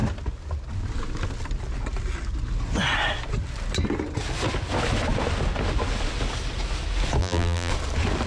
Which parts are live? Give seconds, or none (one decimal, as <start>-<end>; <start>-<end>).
0.0-7.2; 7.7-8.3